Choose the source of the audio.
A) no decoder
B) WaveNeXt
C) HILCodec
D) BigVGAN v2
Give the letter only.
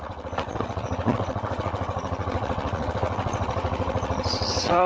B